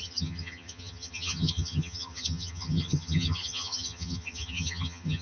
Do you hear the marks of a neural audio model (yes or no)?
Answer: yes